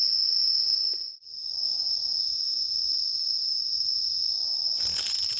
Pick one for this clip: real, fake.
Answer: real